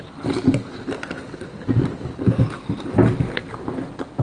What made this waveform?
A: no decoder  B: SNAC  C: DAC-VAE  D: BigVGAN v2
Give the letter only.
A